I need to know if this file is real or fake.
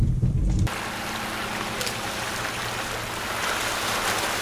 real